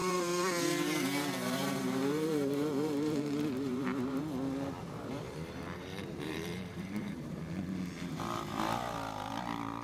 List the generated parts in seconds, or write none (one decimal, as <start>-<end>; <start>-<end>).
0.0-4.2; 4.8-7.4